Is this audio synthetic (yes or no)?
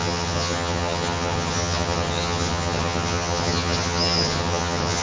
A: yes